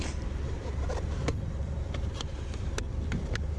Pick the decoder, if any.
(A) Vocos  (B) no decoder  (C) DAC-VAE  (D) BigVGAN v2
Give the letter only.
D